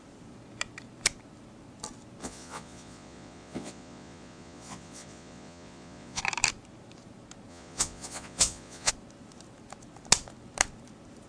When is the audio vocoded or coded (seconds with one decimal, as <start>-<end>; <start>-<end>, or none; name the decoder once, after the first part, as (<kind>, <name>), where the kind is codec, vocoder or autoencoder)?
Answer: 2.2-6.2 (vocoder, Vocos); 7.5-8.9

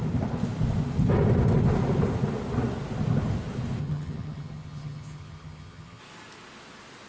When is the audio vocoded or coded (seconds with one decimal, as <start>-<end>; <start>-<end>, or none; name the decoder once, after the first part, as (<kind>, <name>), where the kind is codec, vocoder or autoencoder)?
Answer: 3.8-6.0 (vocoder, HiFi-GAN)

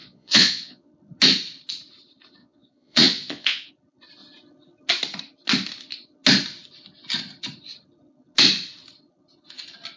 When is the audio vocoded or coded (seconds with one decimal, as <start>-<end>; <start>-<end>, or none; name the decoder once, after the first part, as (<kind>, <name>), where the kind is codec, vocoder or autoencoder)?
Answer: 0.0-0.9 (vocoder, Vocos); 2.4-3.7

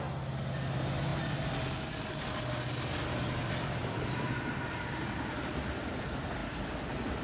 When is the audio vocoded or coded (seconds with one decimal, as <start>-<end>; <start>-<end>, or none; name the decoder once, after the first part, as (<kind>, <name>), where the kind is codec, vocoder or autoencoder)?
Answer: 3.8-4.4 (vocoder, BigVGAN v2)

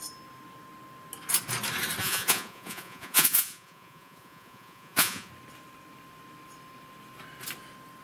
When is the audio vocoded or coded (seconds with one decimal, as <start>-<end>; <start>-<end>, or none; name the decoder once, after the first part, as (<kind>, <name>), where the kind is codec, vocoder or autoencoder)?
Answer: 2.0-5.3 (vocoder, Vocos)